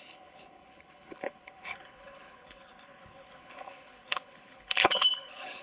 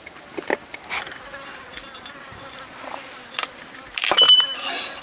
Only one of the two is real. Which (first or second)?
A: second